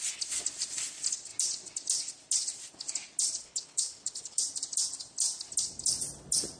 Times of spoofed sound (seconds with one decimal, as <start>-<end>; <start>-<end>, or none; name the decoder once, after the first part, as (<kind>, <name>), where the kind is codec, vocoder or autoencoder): 3.4-4.4 (codec, HILCodec)